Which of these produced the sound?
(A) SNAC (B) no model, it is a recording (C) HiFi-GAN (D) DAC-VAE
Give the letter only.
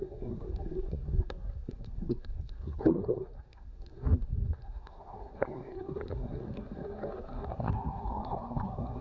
A